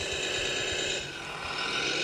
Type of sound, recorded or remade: recorded